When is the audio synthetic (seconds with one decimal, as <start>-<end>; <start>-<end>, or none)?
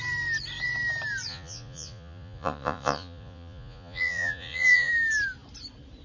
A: 1.3-4.9